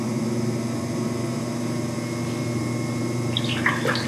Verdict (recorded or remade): recorded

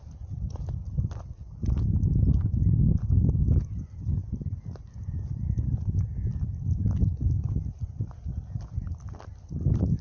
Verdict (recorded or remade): recorded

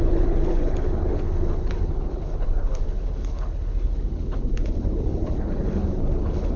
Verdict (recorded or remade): remade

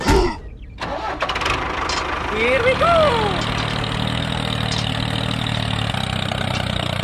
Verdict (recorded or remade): recorded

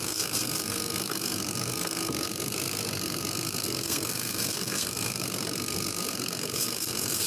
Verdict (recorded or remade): remade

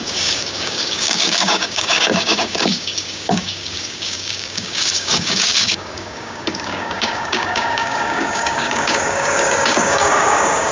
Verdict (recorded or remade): remade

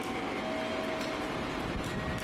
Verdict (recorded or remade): recorded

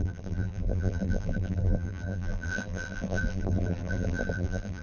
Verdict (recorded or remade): remade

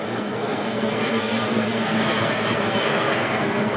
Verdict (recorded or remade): remade